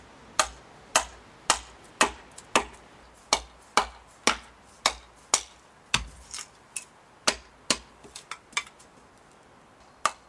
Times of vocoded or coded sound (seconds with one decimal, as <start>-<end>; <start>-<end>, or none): none